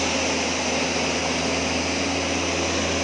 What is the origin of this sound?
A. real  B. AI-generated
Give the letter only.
A